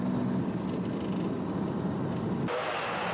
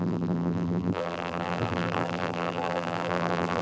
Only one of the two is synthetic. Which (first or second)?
second